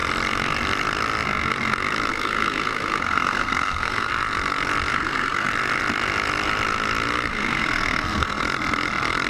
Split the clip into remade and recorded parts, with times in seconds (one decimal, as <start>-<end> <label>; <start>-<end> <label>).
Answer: 0.0-2.1 recorded; 2.1-4.1 remade; 4.1-4.9 recorded; 4.9-5.5 remade; 5.5-7.3 recorded; 7.3-8.4 remade; 8.4-9.3 recorded